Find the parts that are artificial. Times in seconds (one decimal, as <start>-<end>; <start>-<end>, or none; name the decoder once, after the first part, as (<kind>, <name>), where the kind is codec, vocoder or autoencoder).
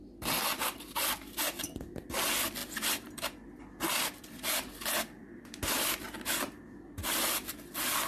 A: none